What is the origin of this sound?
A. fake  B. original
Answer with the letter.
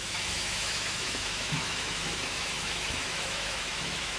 A